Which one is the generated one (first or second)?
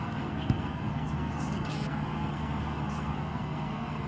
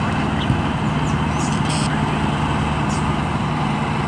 first